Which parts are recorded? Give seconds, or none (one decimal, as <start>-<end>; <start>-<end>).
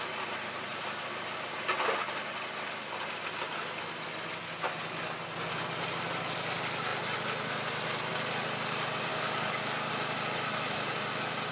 0.0-9.1; 9.9-11.5